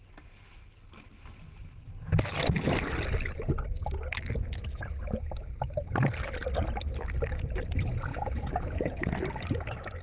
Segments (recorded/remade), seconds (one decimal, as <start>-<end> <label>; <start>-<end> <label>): 0.0-8.1 recorded; 8.1-9.1 remade; 9.1-10.0 recorded

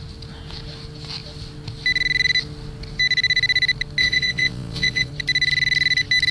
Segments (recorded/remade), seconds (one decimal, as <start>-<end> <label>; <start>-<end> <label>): 0.0-4.0 recorded; 4.0-5.1 remade; 5.1-6.3 recorded

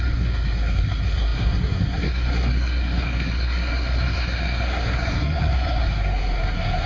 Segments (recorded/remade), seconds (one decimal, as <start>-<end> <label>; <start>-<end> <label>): 0.0-6.9 remade

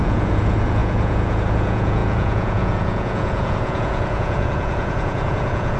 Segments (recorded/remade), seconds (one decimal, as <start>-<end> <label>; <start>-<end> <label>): 0.0-5.8 remade